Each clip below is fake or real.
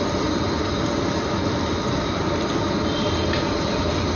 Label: real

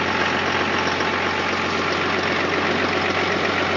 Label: real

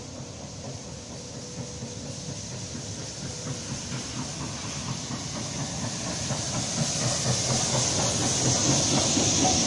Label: real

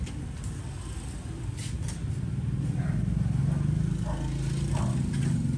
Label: real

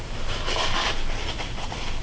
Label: real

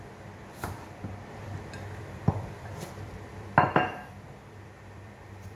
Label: fake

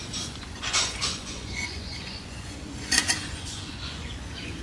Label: fake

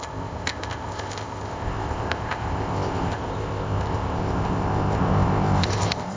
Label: fake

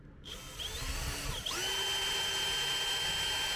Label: real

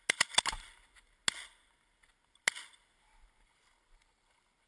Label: real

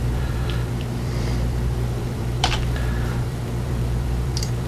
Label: fake